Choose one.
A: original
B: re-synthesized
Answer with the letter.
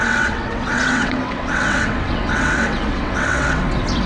B